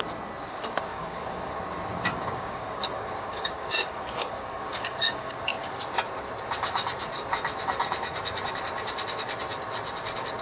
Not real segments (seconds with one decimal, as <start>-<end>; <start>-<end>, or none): 0.9-1.5; 1.9-5.8